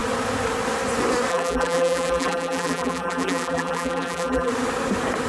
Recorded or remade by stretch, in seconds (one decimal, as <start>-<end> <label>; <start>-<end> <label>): 0.0-1.3 recorded; 1.3-4.5 remade; 4.5-5.3 recorded